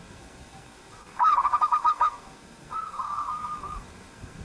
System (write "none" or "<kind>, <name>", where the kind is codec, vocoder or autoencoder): codec, SNAC